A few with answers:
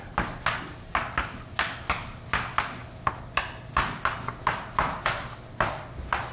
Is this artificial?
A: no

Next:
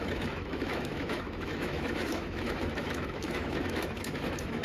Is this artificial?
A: yes